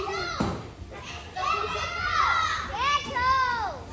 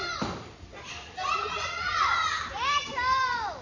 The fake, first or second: second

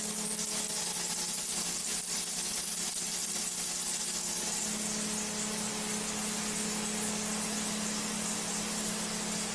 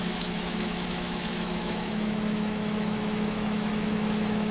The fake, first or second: second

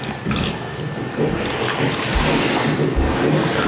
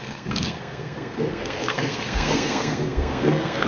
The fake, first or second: second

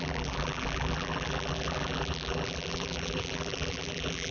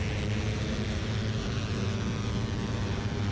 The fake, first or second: first